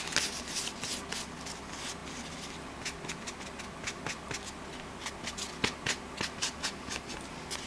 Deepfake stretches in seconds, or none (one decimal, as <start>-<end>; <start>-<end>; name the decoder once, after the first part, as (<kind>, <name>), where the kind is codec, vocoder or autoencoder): none